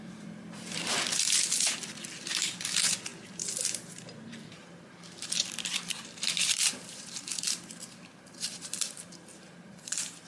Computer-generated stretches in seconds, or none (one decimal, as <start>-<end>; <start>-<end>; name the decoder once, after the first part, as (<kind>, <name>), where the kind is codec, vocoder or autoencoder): 0.0-10.3 (vocoder, BigVGAN v2)